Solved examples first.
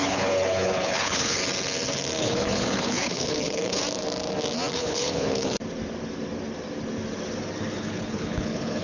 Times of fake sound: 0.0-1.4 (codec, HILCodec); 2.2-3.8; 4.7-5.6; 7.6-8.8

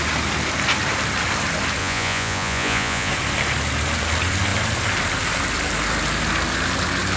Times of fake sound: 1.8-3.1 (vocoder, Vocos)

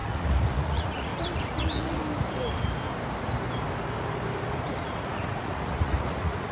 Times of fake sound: 0.0-1.1 (vocoder, Vocos); 1.6-2.0; 4.8-6.5